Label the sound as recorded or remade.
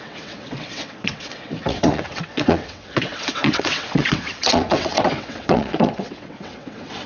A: remade